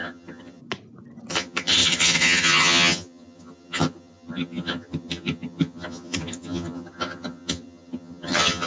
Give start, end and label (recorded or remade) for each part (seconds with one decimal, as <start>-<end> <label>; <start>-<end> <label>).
0.0-0.6 remade; 0.6-1.3 recorded; 1.3-8.7 remade